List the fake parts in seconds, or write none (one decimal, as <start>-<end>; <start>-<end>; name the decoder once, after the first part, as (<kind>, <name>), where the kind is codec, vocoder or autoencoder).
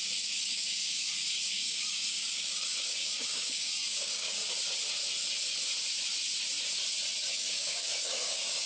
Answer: 0.0-4.4 (codec, DAC); 7.3-8.7